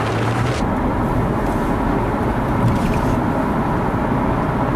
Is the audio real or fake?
real